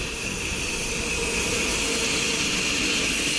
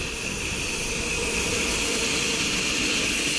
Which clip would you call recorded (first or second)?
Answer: first